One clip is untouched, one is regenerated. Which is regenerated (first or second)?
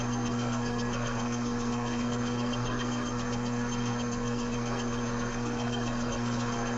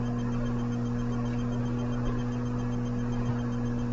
first